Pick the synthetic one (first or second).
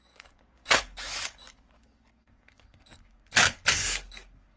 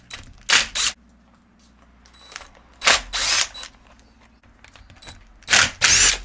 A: first